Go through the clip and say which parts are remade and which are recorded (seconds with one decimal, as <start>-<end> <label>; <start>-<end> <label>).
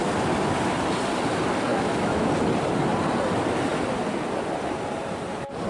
0.0-1.7 recorded; 1.7-2.3 remade; 2.3-5.7 recorded